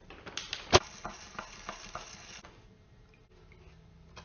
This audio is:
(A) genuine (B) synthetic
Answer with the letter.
A